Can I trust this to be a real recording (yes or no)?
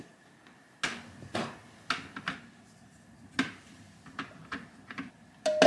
yes